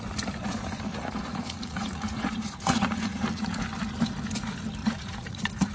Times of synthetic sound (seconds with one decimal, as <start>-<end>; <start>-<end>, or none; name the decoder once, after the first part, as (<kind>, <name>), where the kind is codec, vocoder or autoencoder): 0.9-3.6 (vocoder, Vocos); 4.8-5.7